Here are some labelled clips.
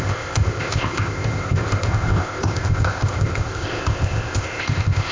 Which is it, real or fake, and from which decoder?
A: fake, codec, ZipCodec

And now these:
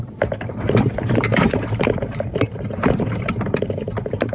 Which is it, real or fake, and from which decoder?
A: fake, vocoder, BigVGAN v2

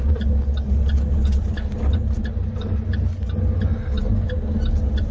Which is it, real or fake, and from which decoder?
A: real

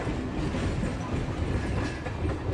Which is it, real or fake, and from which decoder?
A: real